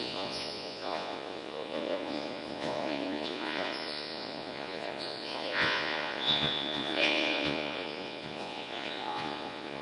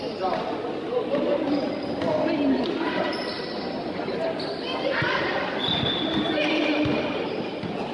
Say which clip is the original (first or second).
second